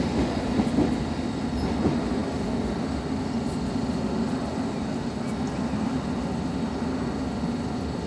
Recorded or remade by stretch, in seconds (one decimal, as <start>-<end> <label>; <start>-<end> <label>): 0.0-8.1 recorded